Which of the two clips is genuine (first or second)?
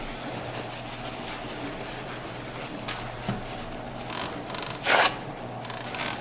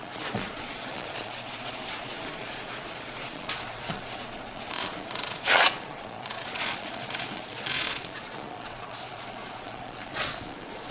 first